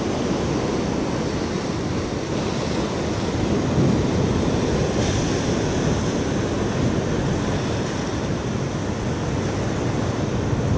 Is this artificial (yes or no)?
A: no